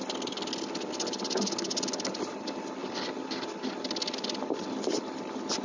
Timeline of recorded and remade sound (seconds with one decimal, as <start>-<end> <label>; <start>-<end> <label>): 0.0-5.6 recorded